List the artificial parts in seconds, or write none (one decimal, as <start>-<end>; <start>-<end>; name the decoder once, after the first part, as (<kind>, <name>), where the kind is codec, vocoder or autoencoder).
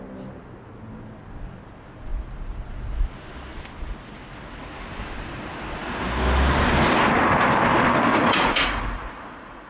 8.1-9.7 (vocoder, Vocos)